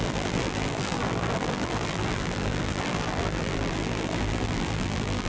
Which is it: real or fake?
fake